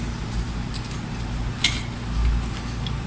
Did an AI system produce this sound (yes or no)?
no